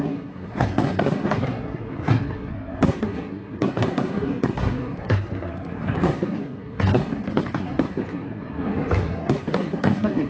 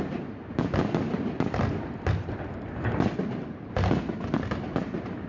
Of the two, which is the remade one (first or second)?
first